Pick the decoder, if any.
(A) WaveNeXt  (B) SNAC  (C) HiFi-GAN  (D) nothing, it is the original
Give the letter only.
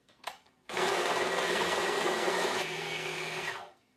B